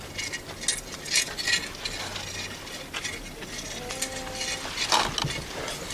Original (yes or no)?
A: yes